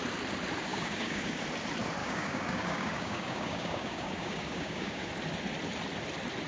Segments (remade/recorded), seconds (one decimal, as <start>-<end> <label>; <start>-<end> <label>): 0.0-0.7 recorded; 0.7-1.4 remade; 1.4-2.0 recorded; 2.0-5.1 remade; 5.1-6.5 recorded